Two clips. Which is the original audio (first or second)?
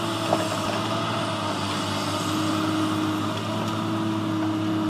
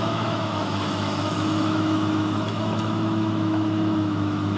first